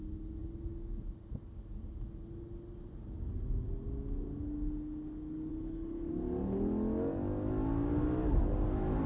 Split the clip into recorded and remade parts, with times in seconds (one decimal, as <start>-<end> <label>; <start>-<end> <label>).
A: 0.0-5.5 recorded; 5.5-6.1 remade; 6.1-9.1 recorded